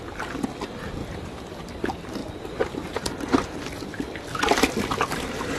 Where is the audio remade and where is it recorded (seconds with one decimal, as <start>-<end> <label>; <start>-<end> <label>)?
0.0-1.0 recorded; 1.0-1.6 remade; 1.6-2.2 recorded; 2.2-4.0 remade; 4.0-5.6 recorded